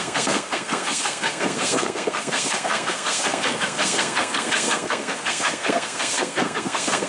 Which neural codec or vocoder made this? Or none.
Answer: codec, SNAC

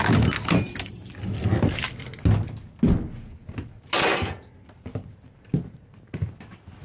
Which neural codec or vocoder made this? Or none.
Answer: none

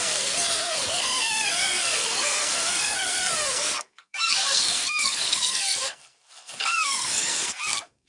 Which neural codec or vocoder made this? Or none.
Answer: codec, SNAC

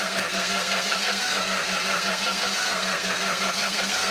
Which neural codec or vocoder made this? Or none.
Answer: codec, SNAC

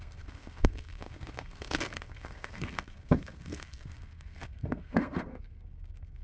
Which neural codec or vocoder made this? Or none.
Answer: codec, SNAC